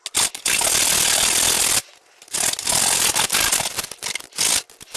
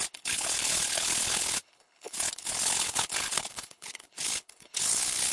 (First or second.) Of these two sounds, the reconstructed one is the second